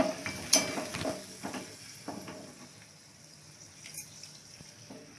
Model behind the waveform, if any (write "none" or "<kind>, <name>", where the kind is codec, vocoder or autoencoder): none